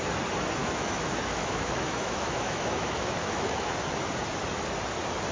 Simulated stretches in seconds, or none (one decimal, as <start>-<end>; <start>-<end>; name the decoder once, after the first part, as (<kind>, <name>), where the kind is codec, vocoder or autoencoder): 0.6-3.7 (autoencoder, DAC-VAE)